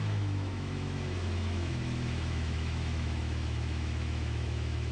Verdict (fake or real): fake